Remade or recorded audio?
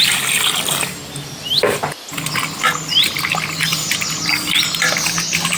recorded